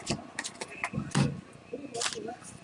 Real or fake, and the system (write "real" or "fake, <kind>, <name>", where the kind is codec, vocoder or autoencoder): real